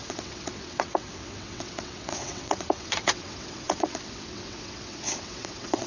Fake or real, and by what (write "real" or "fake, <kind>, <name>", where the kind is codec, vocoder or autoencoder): fake, vocoder, WaveNeXt